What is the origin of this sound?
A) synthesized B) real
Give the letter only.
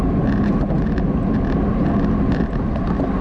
B